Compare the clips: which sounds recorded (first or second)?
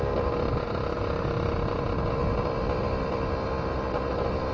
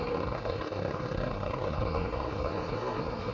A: first